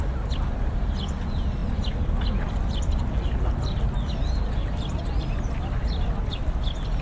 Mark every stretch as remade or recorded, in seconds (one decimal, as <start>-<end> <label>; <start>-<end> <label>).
0.0-7.0 recorded